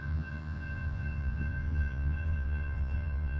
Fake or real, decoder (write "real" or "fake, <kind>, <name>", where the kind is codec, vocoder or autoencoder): fake, vocoder, Vocos